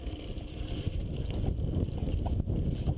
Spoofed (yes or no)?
no